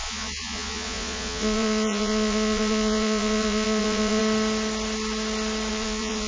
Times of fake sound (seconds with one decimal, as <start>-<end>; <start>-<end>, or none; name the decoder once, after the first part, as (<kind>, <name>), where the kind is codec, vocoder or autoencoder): 0.0-4.2 (vocoder, Vocos); 5.7-6.3